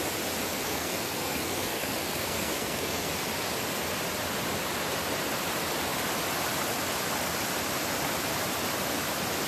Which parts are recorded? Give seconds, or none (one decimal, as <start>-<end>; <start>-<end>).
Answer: 0.0-0.5; 3.1-9.5

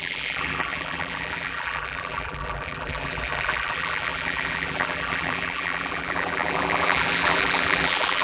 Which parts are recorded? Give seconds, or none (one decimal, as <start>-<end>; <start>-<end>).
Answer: none

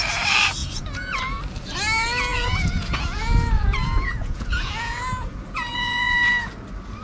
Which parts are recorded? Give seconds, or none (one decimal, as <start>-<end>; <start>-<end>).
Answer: 0.0-0.6; 1.2-2.3; 6.5-7.0

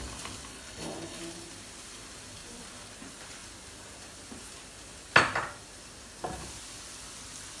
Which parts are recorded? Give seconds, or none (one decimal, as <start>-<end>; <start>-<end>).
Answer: 0.0-0.5; 1.2-7.6

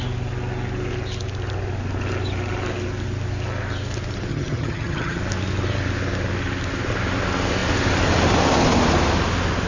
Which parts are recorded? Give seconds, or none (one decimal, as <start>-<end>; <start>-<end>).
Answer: 0.0-4.3; 5.2-9.7

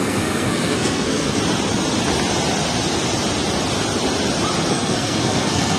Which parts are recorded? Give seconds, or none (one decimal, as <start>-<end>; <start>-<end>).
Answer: 1.4-4.7

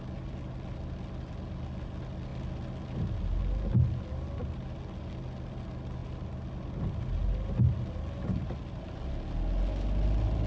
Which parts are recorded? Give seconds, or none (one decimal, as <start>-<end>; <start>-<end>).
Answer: 0.0-10.5